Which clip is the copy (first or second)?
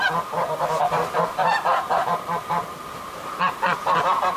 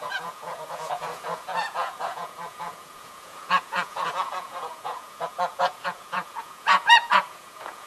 second